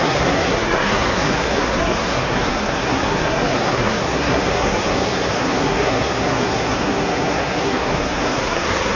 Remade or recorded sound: remade